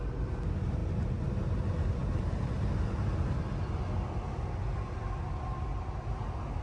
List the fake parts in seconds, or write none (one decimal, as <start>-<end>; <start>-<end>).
none